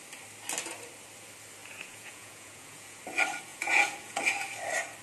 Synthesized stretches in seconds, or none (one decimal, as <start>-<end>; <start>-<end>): 1.6-3.0; 3.5-4.2

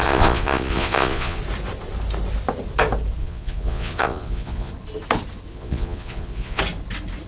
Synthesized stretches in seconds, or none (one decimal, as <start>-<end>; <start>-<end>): 0.0-1.4; 3.2-4.7; 5.5-6.6

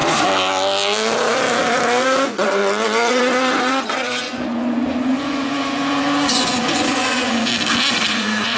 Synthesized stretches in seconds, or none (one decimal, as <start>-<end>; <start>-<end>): 2.0-2.6; 3.1-7.5; 8.1-8.6